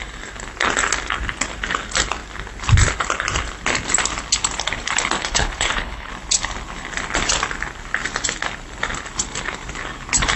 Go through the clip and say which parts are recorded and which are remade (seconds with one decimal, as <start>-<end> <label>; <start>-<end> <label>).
0.0-5.2 recorded; 5.2-6.1 remade; 6.1-10.4 recorded

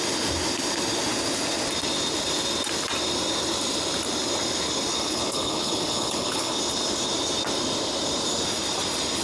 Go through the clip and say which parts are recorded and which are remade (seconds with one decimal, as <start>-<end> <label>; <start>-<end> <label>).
0.0-4.9 recorded; 4.9-6.6 remade; 6.6-9.2 recorded

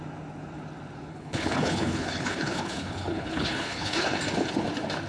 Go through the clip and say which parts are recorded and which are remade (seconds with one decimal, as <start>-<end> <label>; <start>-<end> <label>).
0.0-1.1 recorded; 1.1-4.2 remade; 4.2-5.1 recorded

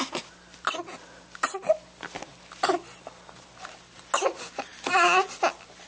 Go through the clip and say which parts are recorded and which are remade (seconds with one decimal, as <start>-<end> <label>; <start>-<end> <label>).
0.0-5.9 recorded

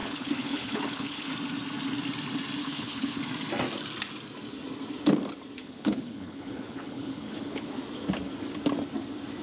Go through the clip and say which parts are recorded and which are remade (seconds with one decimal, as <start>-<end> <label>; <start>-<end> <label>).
0.0-1.3 remade; 1.3-2.6 recorded; 2.6-3.2 remade; 3.2-5.6 recorded; 5.6-7.7 remade; 7.7-9.4 recorded